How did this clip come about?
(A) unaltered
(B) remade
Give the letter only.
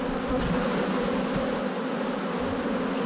A